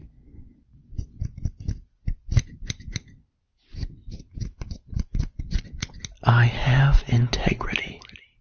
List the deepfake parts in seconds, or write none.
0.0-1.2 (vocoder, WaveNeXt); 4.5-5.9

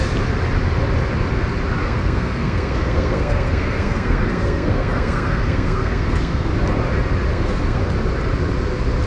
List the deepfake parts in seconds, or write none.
1.8-6.5 (codec, SNAC); 7.3-7.8

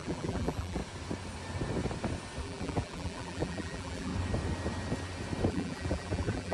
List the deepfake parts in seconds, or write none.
0.0-0.8 (vocoder, BigVGAN v2); 2.4-4.1; 5.5-6.5

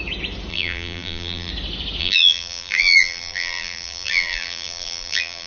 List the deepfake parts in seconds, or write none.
0.5-1.5 (vocoder, BigVGAN v2); 2.0-5.5

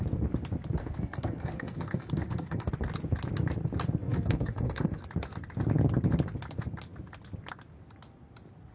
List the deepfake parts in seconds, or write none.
0.8-2.7 (codec, SNAC); 4.0-5.0

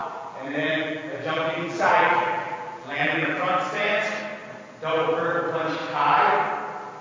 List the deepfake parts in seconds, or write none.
0.0-3.6 (vocoder, BigVGAN v2)

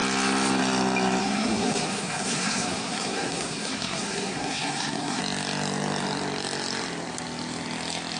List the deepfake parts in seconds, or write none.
1.2-5.2 (codec, SNAC)

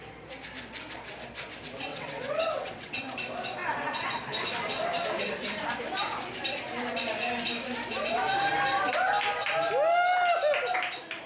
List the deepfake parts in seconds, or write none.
1.9-3.0 (vocoder, WaveNeXt)